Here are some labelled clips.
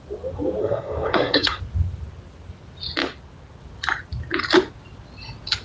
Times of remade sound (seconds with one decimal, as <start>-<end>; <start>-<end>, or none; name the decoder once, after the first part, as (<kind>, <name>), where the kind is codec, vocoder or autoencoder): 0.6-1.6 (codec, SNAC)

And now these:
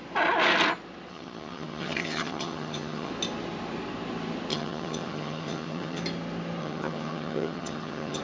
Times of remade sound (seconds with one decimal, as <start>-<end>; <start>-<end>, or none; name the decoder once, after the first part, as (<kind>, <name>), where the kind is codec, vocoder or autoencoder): 1.1-3.1 (vocoder, HiFi-GAN); 4.5-6.0; 6.6-8.2

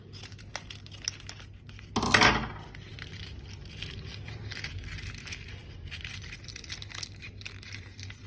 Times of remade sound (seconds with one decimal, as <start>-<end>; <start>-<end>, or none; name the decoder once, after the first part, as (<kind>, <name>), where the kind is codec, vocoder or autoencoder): none